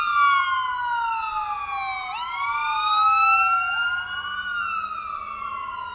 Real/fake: real